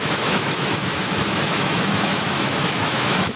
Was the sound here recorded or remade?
remade